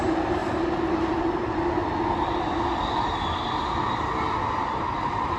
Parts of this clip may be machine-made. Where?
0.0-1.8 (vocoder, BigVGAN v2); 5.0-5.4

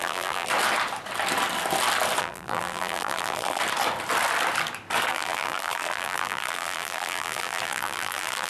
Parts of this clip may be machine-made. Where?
0.0-0.5 (vocoder, BigVGAN v2); 2.2-3.6; 5.1-8.5

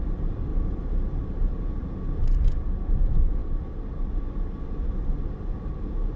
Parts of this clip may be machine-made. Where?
0.5-2.2 (vocoder, BigVGAN v2); 3.4-4.2